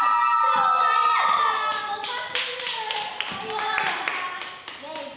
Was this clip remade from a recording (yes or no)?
no